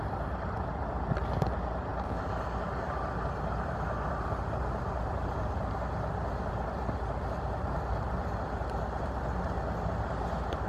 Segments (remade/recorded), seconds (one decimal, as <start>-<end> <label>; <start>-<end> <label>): 0.0-10.7 recorded